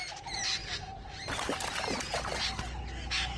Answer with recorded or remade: recorded